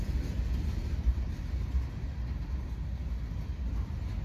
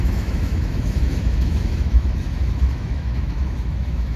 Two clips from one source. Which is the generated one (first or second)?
second